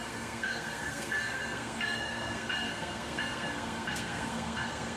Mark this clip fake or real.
fake